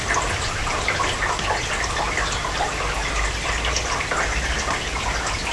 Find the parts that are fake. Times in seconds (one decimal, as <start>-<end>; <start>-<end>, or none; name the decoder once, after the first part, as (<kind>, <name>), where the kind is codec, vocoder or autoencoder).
none